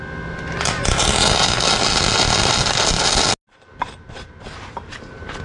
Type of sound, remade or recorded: recorded